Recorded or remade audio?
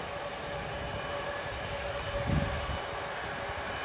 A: recorded